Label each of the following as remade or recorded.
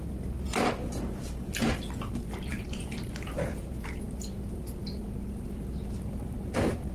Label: recorded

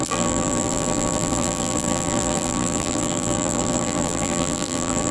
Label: remade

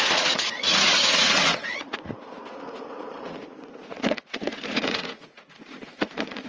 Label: remade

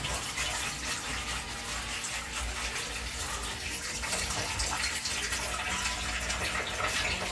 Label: recorded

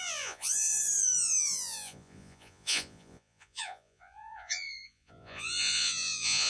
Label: remade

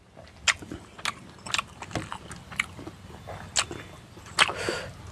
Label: recorded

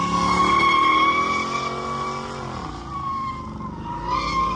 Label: recorded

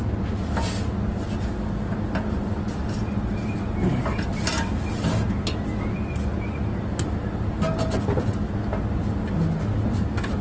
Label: recorded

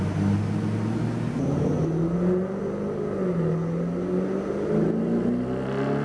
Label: recorded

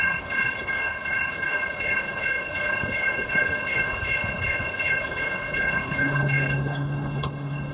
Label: remade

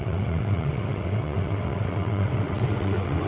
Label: remade